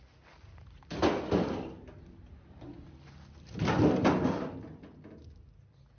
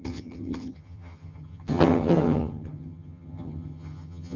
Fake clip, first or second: second